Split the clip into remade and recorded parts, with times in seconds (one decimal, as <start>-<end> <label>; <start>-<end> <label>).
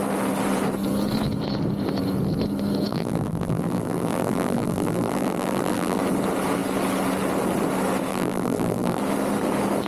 0.0-2.9 recorded; 2.9-6.0 remade; 6.0-8.1 recorded; 8.1-9.0 remade; 9.0-9.9 recorded